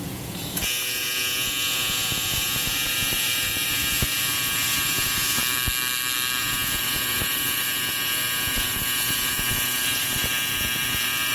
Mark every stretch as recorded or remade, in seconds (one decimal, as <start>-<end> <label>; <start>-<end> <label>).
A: 0.0-5.4 remade; 5.4-6.4 recorded; 6.4-11.3 remade